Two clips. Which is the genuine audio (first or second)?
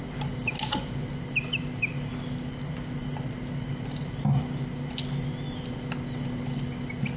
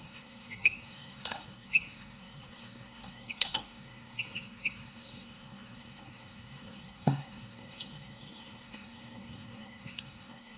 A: first